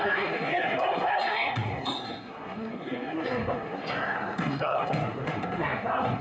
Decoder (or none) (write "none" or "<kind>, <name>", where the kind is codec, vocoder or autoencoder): codec, SNAC